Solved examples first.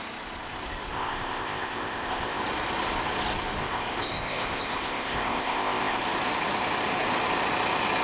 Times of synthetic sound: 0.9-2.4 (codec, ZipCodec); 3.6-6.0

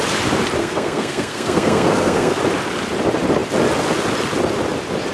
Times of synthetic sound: 0.6-2.4 (codec, SNAC)